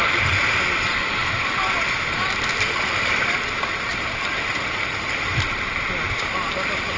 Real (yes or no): no